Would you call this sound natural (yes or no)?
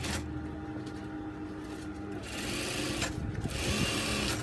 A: yes